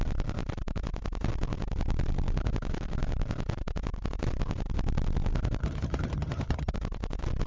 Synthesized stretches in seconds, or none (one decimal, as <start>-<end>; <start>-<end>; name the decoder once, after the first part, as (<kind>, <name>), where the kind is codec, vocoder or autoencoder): 5.6-6.7 (vocoder, HiFi-GAN)